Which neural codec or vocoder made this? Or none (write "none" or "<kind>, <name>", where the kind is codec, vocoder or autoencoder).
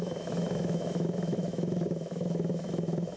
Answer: autoencoder, DAC-VAE